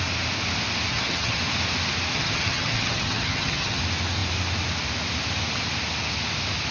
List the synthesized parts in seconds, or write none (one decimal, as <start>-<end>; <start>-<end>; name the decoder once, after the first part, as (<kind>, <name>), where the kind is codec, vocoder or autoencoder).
0.9-1.4 (vocoder, HiFi-GAN); 2.1-3.8